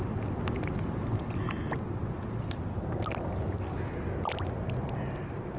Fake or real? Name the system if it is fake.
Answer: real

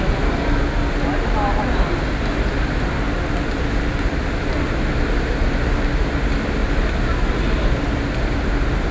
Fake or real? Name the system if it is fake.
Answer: real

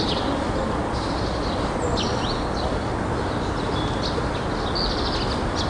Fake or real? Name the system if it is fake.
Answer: real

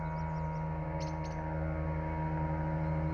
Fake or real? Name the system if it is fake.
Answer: real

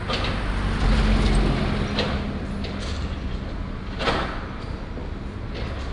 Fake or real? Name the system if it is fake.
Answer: real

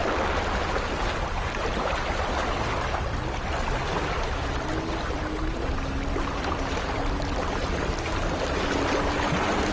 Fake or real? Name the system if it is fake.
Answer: real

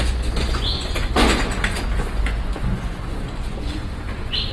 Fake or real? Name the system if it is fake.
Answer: fake, vocoder, Vocos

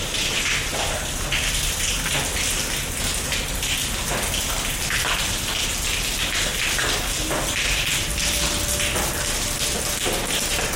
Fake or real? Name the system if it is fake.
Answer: real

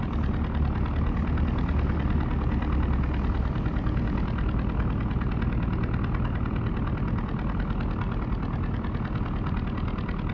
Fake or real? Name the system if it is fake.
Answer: real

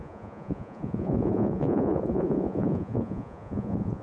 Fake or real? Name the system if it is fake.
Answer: fake, vocoder, Vocos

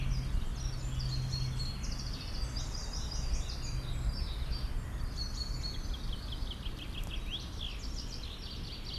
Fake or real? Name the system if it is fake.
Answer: real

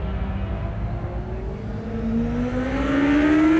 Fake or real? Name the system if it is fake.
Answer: real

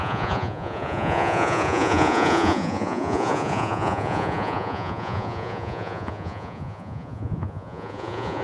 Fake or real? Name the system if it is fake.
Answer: fake, vocoder, Vocos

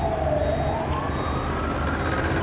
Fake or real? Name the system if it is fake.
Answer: real